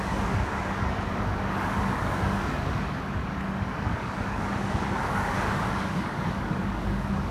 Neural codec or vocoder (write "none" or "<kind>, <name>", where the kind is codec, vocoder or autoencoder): codec, DAC